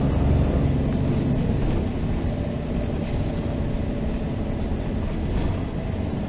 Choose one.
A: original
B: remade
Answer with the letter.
A